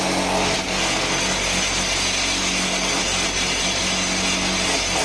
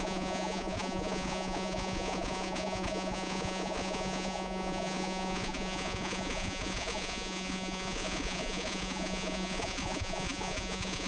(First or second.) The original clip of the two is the first